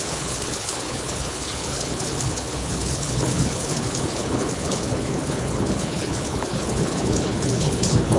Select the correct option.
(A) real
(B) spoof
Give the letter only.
B